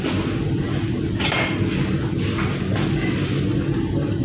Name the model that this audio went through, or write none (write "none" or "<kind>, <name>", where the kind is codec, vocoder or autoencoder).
none